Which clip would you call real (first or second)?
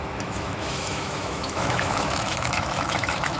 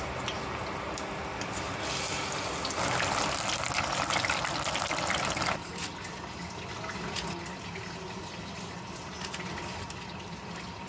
second